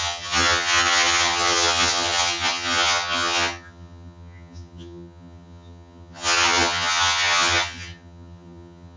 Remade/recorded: remade